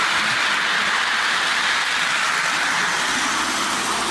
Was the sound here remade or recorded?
recorded